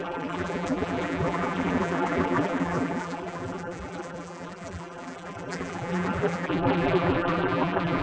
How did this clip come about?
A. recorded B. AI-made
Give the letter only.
B